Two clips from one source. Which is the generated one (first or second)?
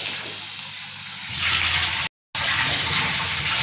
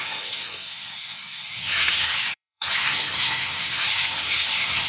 second